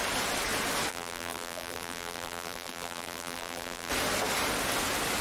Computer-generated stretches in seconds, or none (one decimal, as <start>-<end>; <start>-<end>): 0.9-3.9